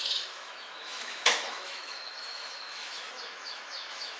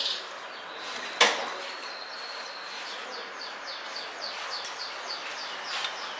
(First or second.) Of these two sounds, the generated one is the first